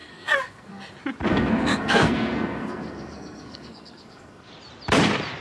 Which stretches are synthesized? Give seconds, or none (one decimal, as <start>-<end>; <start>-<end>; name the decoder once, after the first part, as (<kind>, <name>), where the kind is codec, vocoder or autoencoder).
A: 0.0-0.8 (codec, SNAC); 1.3-4.5